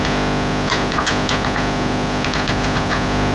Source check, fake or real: real